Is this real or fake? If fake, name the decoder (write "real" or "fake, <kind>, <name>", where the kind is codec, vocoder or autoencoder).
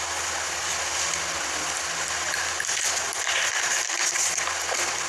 real